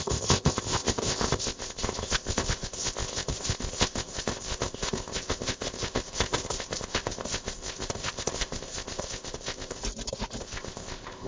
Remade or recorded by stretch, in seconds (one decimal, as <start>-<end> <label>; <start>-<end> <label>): 0.0-9.8 remade; 9.8-10.4 recorded; 10.4-11.3 remade